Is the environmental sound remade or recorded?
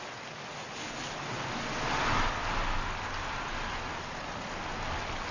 recorded